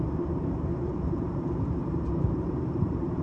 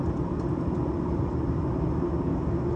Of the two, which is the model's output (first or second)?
first